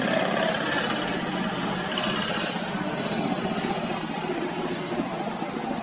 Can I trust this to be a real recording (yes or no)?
yes